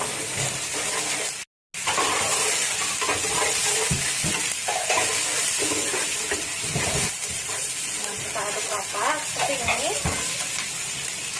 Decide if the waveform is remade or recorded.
recorded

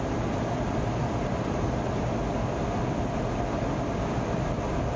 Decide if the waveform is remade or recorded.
recorded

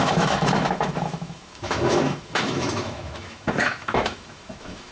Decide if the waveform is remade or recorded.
remade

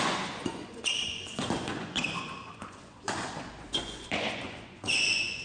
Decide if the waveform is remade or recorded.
remade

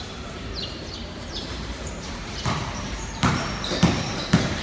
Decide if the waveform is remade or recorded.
remade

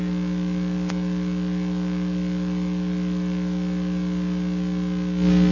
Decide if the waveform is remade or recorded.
recorded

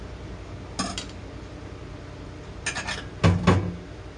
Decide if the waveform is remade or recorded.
recorded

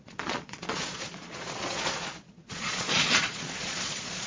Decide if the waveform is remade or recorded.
remade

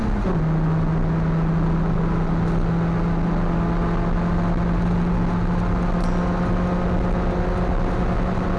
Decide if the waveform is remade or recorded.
recorded